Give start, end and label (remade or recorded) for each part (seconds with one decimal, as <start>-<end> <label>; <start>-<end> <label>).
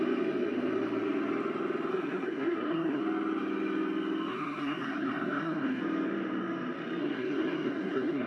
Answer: 0.0-1.9 recorded; 1.9-3.0 remade; 3.0-4.3 recorded; 4.3-5.8 remade; 5.8-7.0 recorded; 7.0-8.3 remade